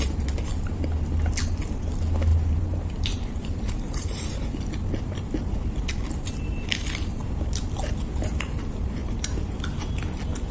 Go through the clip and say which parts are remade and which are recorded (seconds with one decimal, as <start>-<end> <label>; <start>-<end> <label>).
0.0-2.3 recorded; 2.3-4.3 remade; 4.3-9.0 recorded; 9.0-9.6 remade; 9.6-10.5 recorded